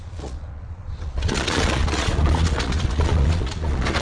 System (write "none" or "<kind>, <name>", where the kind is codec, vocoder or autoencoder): vocoder, Vocos